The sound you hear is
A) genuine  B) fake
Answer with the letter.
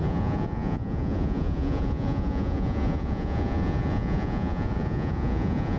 B